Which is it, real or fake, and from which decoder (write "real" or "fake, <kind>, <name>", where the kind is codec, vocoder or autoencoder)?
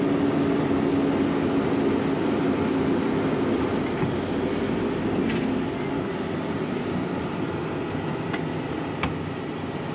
real